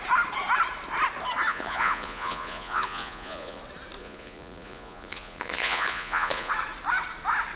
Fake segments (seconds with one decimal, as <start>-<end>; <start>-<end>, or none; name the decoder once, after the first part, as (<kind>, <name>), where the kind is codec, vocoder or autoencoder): 1.5-3.6 (vocoder, Vocos); 4.0-6.5